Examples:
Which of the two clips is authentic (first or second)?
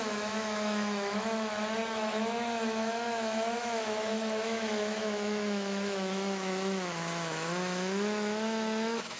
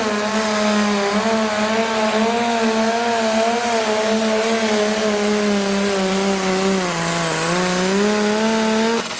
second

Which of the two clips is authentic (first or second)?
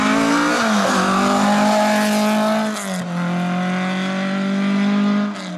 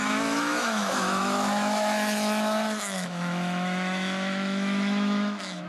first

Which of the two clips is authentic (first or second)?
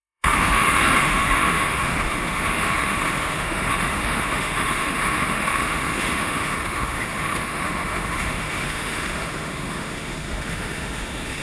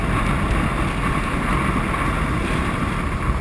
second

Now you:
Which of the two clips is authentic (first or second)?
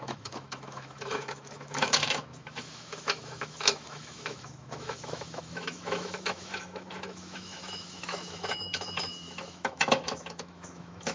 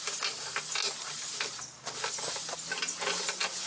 second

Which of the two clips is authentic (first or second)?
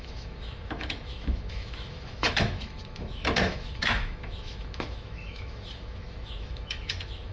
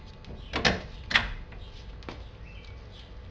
second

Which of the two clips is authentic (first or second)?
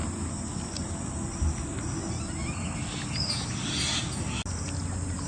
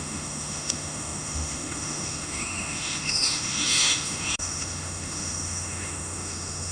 first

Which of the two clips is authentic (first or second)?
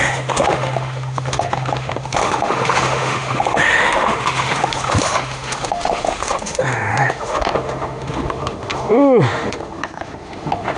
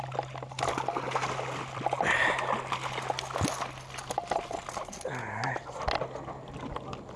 second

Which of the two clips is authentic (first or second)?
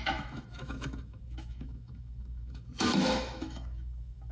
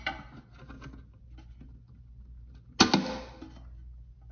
second